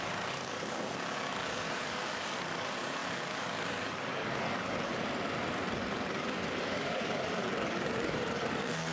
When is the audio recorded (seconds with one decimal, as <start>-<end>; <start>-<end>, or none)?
4.9-5.9